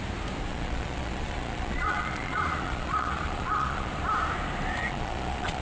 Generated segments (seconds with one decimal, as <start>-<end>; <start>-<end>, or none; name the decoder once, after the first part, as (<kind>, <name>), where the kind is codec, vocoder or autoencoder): 0.5-3.9 (vocoder, Vocos); 4.8-5.6